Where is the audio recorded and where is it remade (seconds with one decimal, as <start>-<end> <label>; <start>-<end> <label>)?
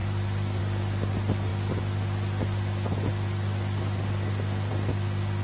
0.0-5.4 recorded